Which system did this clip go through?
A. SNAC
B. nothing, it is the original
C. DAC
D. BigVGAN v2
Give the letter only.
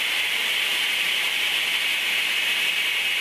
D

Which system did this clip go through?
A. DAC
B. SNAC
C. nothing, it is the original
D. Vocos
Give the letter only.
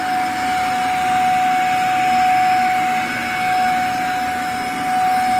C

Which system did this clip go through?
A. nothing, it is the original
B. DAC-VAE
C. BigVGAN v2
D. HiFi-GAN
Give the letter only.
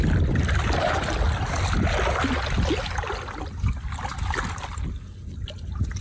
A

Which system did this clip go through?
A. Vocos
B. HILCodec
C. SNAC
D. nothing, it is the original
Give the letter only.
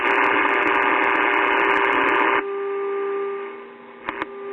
D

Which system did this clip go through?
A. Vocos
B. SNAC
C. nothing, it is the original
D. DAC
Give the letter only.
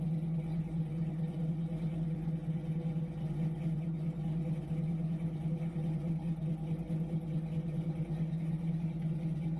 C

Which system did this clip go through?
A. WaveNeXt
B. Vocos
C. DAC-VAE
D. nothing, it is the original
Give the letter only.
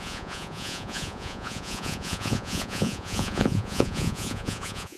B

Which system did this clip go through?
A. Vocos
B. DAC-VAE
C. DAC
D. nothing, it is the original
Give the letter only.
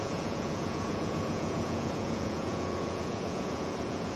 A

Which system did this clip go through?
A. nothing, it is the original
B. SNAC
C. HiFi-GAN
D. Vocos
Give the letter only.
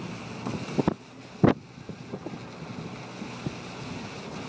A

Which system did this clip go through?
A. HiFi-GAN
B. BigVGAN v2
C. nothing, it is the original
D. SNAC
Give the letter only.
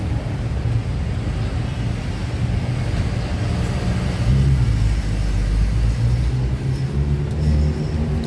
C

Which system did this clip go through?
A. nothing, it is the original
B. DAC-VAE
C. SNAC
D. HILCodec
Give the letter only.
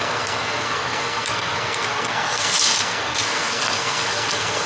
C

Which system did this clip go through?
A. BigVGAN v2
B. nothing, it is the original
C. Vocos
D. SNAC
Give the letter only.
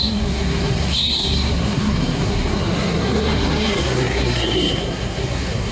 D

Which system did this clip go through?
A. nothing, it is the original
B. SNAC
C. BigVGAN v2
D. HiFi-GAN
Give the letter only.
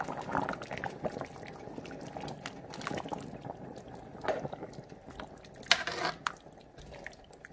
A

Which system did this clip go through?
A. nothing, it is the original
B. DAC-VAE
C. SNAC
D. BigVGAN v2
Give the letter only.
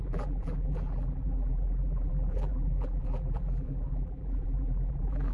D